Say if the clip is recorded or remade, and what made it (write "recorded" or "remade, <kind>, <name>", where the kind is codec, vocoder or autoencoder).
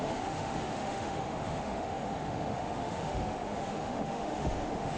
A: remade, autoencoder, DAC-VAE